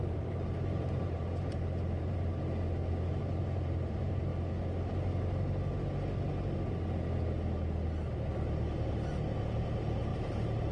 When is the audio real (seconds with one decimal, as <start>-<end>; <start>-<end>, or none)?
2.3-3.2; 4.3-9.4